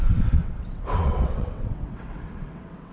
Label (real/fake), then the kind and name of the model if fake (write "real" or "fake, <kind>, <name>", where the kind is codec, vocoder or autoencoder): fake, vocoder, WaveNeXt